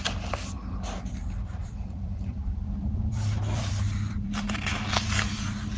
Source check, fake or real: fake